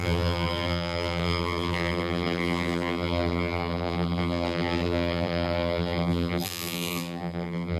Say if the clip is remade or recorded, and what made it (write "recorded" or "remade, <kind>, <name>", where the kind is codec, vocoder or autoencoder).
remade, vocoder, BigVGAN v2